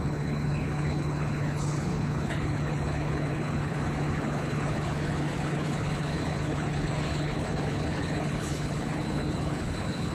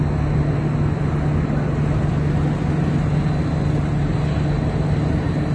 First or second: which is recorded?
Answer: second